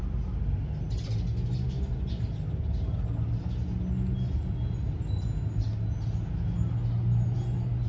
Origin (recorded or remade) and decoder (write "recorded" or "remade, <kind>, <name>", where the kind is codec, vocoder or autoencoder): recorded